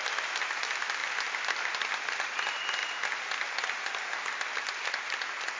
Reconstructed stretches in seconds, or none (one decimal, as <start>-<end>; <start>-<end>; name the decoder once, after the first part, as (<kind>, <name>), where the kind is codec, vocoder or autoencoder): 0.0-1.0 (vocoder, BigVGAN v2); 1.9-2.8; 4.9-5.6